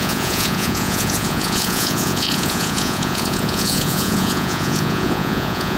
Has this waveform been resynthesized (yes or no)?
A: yes